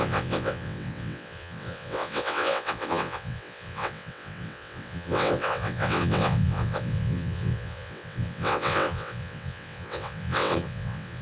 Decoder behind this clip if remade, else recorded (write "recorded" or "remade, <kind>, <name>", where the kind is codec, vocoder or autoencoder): remade, vocoder, WaveNeXt